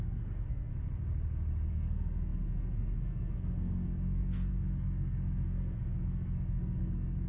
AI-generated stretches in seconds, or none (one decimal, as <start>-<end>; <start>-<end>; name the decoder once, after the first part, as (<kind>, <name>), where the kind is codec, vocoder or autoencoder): 0.0-0.7 (codec, SNAC); 1.7-7.3